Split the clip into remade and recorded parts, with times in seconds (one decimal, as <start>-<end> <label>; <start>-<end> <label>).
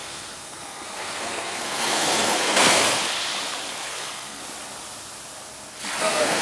0.0-2.8 remade; 2.8-3.8 recorded; 3.8-4.4 remade; 4.4-6.0 recorded; 6.0-6.4 remade